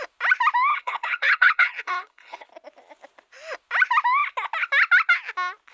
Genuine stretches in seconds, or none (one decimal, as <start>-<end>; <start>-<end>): 0.0-0.7; 2.5-5.7